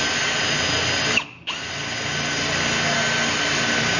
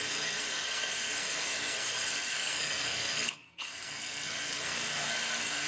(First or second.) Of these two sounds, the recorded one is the first